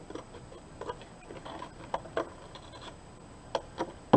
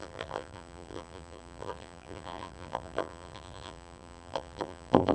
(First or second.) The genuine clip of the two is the first